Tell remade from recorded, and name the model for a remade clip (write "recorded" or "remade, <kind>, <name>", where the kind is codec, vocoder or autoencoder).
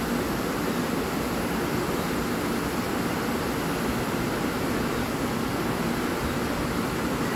recorded